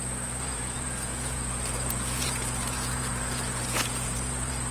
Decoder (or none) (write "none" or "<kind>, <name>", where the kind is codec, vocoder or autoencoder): vocoder, Vocos